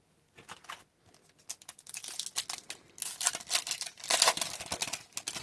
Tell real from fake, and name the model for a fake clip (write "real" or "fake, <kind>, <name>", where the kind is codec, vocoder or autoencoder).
real